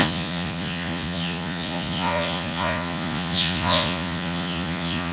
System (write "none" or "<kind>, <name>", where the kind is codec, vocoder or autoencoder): vocoder, Vocos